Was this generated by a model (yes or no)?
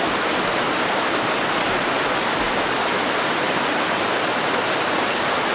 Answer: no